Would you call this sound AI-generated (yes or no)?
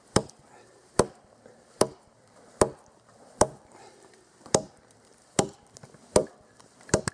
yes